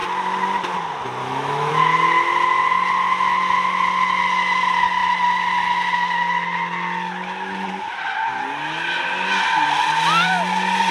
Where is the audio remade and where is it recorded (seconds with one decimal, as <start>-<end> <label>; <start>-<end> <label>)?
0.0-1.2 recorded; 1.2-1.7 remade; 1.7-10.9 recorded